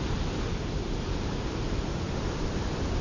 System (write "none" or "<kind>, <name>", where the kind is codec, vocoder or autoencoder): none